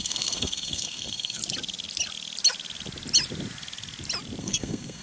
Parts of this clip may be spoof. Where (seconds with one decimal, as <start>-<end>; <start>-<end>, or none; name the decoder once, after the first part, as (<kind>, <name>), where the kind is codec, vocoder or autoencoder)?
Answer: 0.0-1.4 (codec, SNAC); 4.4-5.0